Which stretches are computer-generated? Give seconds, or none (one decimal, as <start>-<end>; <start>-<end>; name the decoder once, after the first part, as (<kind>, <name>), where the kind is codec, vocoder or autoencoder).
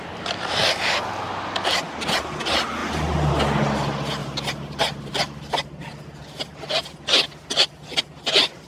4.2-5.4 (vocoder, BigVGAN v2)